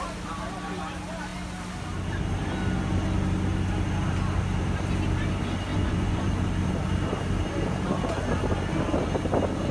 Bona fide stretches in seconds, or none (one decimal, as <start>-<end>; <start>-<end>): 0.0-5.7; 6.3-9.7